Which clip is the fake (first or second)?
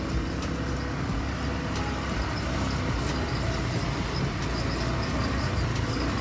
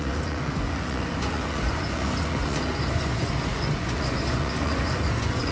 second